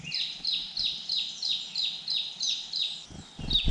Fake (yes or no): no